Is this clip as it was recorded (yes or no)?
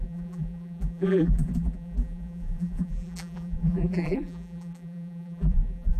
no